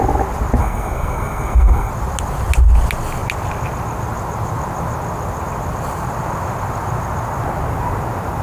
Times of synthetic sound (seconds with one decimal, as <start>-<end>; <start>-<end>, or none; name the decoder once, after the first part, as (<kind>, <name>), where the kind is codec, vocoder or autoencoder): 0.6-1.9 (codec, SNAC)

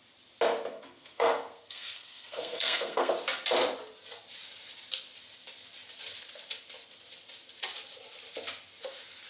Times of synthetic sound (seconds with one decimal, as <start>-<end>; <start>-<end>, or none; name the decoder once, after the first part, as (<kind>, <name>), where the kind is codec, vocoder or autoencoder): 0.7-3.1 (codec, SNAC)

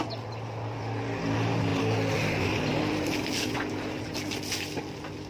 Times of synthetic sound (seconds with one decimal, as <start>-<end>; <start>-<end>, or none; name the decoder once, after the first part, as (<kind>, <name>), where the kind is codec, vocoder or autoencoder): none

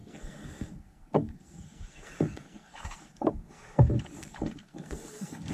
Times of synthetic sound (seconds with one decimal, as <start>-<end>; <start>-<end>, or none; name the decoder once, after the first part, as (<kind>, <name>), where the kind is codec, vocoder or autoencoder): 0.0-5.5 (codec, SNAC)